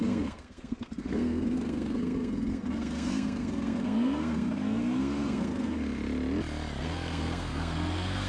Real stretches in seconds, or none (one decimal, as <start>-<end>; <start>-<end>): 6.0-6.8